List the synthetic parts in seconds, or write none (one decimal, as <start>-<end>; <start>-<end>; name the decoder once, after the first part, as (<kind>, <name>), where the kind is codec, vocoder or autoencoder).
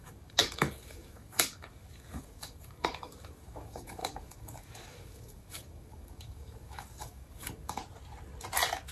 0.0-7.8 (codec, DAC)